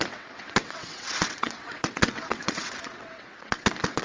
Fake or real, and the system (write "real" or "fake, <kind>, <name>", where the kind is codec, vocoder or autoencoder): fake, vocoder, WaveNeXt